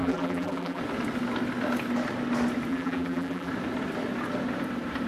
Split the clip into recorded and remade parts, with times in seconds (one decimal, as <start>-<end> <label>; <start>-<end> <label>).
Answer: 0.0-0.8 remade; 0.8-2.7 recorded; 2.7-3.5 remade; 3.5-5.1 recorded